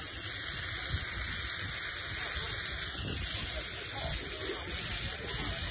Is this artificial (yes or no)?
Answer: no